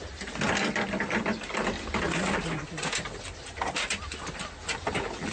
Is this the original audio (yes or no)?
yes